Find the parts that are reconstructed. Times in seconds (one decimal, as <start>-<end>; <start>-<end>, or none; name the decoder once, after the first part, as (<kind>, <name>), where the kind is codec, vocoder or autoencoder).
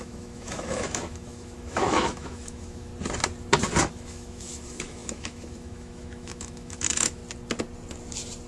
0.0-2.9 (autoencoder, DAC-VAE); 3.8-7.2